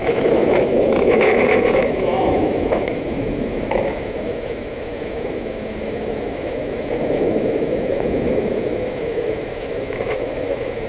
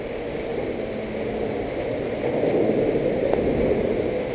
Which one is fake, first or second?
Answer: first